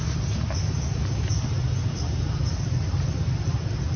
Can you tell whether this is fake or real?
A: real